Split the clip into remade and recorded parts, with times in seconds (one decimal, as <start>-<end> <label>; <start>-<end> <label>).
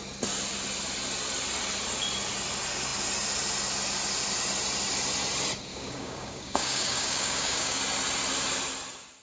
0.0-5.7 recorded; 5.7-7.8 remade; 7.8-9.2 recorded